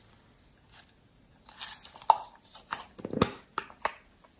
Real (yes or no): yes